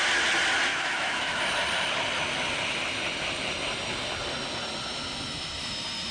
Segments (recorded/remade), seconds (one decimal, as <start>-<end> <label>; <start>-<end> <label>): 0.0-0.7 recorded; 0.7-1.4 remade; 1.4-6.1 recorded